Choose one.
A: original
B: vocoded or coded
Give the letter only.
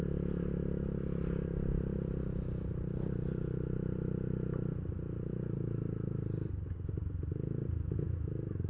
A